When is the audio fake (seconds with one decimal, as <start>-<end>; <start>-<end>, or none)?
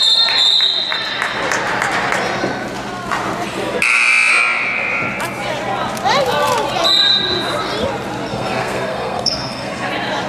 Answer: 8.3-9.9